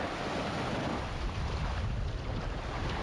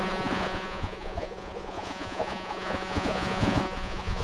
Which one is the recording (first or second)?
first